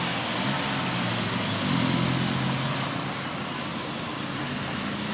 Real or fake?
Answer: real